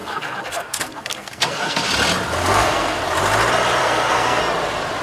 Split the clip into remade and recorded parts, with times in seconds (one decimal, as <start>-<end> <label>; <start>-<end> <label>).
0.0-1.9 remade; 1.9-2.4 recorded; 2.4-3.0 remade; 3.0-3.8 recorded; 3.8-4.4 remade; 4.4-5.0 recorded